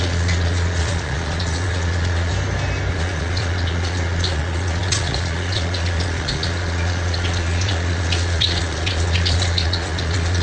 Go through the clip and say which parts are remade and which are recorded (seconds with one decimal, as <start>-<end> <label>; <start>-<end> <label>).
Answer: 0.0-2.3 remade; 2.3-2.9 recorded; 2.9-10.4 remade